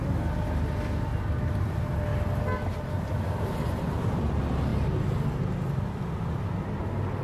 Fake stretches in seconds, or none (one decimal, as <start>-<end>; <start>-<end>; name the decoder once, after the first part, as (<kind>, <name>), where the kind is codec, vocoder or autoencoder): none